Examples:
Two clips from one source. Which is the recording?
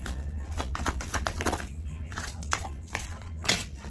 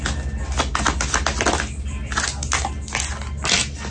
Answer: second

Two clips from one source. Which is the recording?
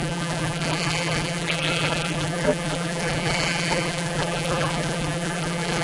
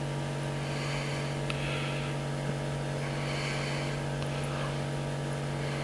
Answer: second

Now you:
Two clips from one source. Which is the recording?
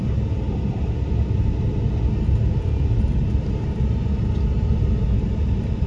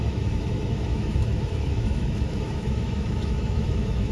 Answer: first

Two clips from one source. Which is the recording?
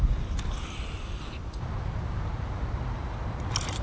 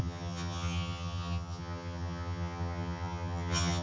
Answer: first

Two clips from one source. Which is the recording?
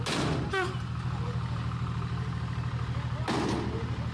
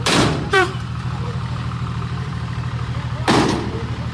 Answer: first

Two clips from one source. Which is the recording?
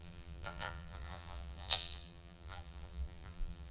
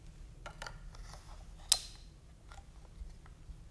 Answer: second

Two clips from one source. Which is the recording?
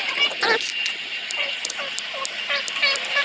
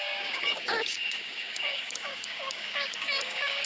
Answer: first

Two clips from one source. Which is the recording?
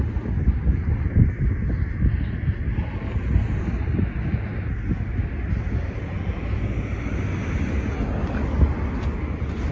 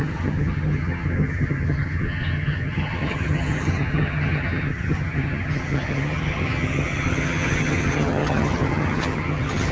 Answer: first